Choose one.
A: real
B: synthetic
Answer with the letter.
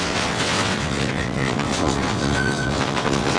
B